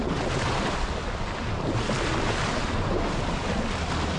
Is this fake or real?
real